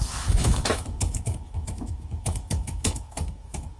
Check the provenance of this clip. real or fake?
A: fake